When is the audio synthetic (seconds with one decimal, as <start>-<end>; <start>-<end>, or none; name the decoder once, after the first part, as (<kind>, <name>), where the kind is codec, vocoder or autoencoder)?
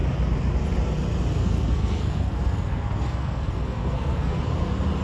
1.4-4.4 (codec, SNAC)